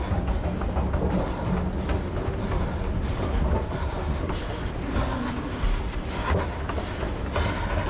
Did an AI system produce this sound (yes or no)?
no